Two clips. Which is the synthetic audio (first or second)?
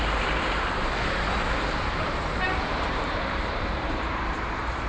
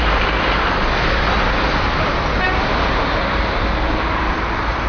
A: first